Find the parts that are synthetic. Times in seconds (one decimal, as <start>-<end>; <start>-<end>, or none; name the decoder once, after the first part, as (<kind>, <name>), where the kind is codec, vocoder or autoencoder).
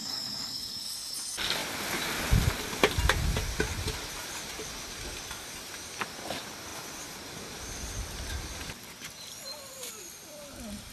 0.0-0.8 (codec, DAC)